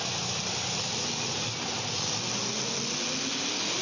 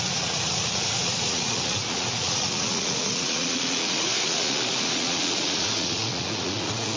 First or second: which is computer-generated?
second